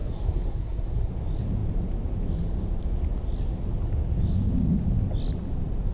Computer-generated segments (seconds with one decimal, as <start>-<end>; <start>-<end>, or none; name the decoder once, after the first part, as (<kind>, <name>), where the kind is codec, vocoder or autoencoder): 0.0-1.1 (codec, SNAC)

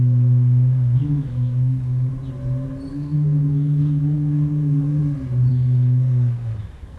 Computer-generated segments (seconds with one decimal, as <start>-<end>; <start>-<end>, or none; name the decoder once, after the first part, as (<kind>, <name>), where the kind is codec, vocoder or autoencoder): 0.0-2.1 (codec, SNAC); 2.9-5.0; 5.5-7.0

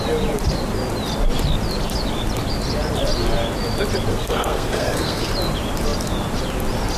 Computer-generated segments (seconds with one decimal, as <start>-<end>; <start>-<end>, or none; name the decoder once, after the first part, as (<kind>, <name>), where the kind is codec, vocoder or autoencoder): 4.1-5.3 (codec, SNAC)

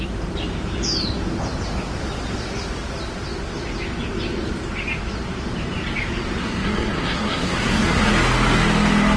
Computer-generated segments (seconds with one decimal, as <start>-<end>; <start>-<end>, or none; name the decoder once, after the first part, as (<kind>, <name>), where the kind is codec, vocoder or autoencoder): 6.4-8.1 (codec, SNAC)